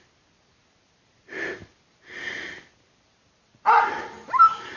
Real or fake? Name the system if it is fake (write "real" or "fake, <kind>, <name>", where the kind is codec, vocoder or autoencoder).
real